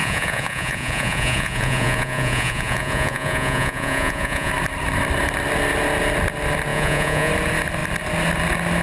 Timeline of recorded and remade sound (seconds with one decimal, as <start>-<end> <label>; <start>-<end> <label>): 0.0-4.5 remade; 4.5-6.7 recorded; 6.7-7.3 remade; 7.3-8.8 recorded